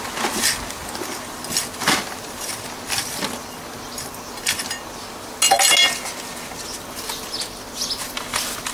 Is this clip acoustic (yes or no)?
yes